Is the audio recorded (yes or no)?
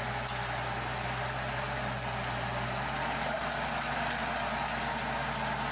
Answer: yes